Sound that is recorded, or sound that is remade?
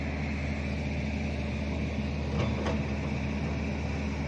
recorded